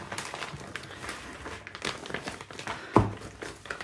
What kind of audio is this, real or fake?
real